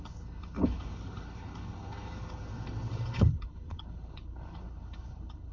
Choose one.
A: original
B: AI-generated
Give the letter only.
B